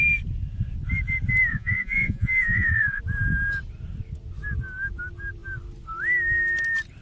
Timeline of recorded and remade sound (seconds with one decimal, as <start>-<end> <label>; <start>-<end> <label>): 0.0-1.5 recorded; 1.5-3.0 remade; 3.0-7.0 recorded